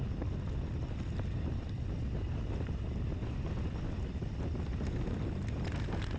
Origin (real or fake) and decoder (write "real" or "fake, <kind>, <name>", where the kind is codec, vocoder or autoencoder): real